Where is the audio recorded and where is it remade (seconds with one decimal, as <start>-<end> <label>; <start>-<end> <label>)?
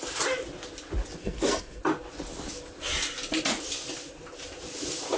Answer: 0.0-1.2 recorded; 1.2-1.8 remade; 1.8-5.2 recorded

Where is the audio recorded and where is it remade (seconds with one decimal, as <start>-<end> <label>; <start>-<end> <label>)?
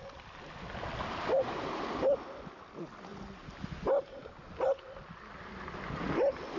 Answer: 0.0-6.6 recorded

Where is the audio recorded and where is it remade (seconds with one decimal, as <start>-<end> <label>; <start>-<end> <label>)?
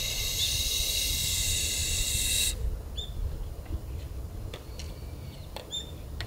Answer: 0.0-6.3 recorded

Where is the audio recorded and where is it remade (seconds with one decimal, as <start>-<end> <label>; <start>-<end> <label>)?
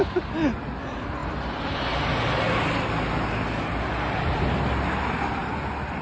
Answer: 0.0-6.0 recorded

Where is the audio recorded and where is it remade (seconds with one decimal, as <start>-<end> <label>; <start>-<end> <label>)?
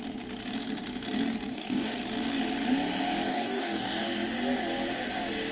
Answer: 0.0-1.5 recorded; 1.5-2.0 remade; 2.0-3.3 recorded; 3.3-4.0 remade; 4.0-5.5 recorded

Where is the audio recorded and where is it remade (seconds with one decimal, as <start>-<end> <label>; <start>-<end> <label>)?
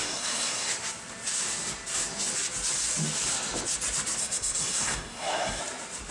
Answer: 0.0-0.7 remade; 0.7-4.2 recorded; 4.2-5.6 remade; 5.6-6.1 recorded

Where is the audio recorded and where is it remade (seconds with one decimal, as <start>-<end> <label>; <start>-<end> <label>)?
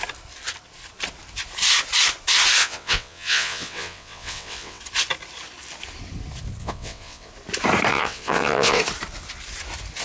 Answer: 0.0-2.6 recorded; 2.6-4.8 remade; 4.8-6.6 recorded; 6.6-7.3 remade; 7.3-7.9 recorded; 7.9-8.8 remade; 8.8-10.0 recorded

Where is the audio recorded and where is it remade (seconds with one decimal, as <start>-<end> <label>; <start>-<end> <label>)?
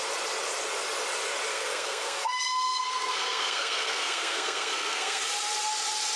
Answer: 0.0-1.5 recorded; 1.5-5.2 remade; 5.2-6.2 recorded